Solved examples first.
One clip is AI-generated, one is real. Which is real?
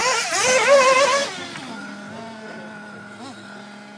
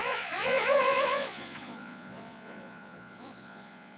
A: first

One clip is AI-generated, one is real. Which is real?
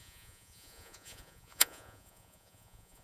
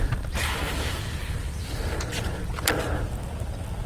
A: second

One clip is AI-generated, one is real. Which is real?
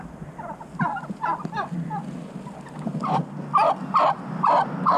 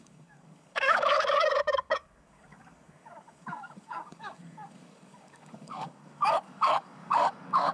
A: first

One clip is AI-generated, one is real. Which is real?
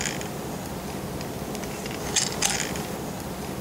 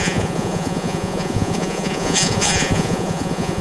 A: first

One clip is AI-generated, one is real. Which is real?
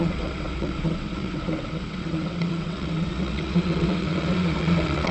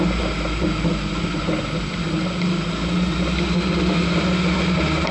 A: second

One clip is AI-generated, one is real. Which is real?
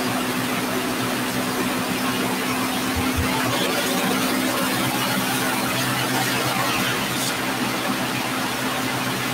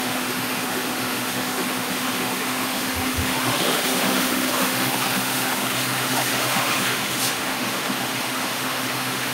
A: first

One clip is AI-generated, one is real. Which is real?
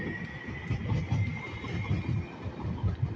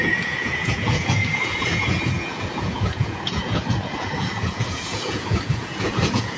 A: first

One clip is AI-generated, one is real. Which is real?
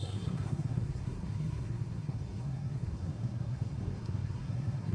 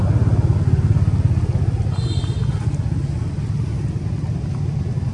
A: second